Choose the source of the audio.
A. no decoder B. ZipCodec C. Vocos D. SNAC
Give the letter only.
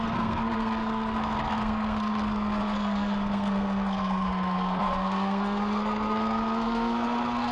D